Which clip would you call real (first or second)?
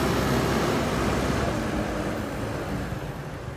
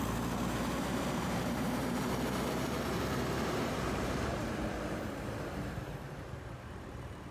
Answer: first